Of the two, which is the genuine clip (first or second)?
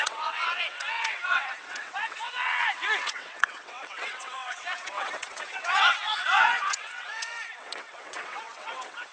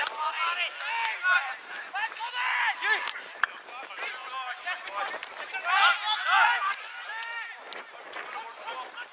second